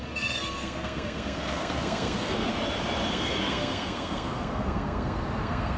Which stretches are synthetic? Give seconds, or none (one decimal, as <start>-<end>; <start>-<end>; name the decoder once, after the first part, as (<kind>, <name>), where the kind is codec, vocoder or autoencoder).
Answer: 0.0-2.5 (codec, SNAC); 3.1-5.8